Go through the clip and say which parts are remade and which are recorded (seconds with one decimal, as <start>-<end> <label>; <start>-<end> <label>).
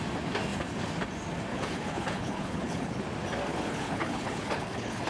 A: 0.0-1.5 recorded; 1.5-3.0 remade; 3.0-3.5 recorded; 3.5-5.1 remade